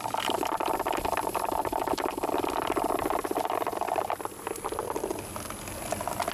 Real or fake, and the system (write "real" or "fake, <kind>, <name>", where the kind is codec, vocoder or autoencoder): real